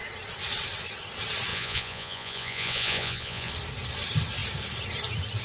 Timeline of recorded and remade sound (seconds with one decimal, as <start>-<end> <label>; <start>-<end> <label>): 0.0-1.5 recorded; 1.5-3.5 remade; 3.5-5.4 recorded